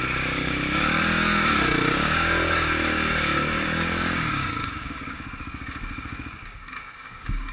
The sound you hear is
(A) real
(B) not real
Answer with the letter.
B